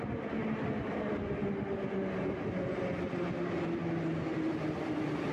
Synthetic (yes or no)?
no